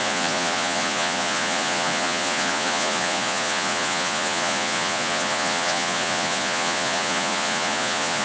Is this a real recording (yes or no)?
no